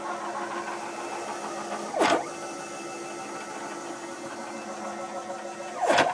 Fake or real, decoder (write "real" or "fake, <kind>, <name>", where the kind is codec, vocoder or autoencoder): real